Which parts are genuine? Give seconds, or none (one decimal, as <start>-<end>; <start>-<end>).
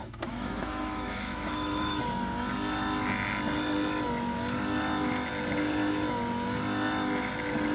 2.0-7.7